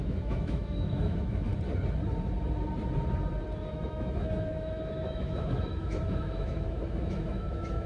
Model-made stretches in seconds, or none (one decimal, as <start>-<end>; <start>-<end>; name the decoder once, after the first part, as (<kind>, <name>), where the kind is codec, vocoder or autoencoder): 0.0-1.5 (autoencoder, DAC-VAE); 3.7-7.9